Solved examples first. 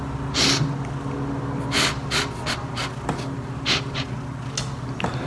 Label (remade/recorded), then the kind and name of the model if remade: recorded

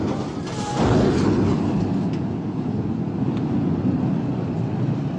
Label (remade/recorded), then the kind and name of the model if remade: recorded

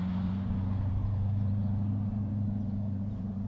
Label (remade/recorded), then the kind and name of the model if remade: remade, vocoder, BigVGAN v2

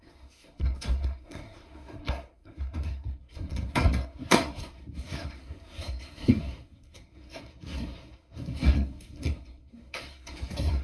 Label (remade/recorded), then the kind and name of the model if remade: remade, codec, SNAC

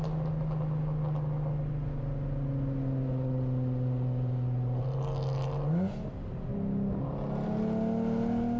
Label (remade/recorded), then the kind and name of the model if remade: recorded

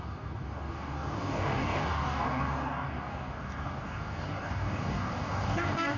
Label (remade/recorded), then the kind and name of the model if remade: remade, codec, DAC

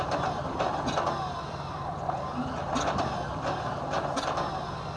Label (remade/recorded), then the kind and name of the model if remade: recorded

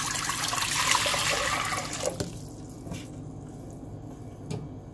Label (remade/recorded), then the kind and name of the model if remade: recorded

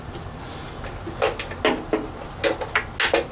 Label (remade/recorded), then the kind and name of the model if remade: recorded